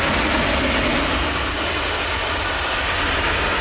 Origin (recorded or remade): recorded